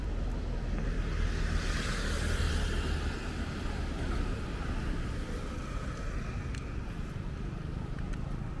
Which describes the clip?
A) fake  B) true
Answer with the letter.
B